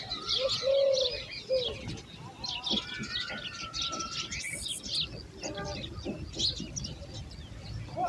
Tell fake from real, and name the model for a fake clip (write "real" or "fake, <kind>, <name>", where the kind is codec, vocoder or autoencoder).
real